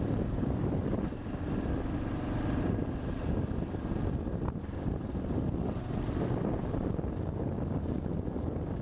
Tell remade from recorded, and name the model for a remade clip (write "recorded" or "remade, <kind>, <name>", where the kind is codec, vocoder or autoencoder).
remade, vocoder, BigVGAN v2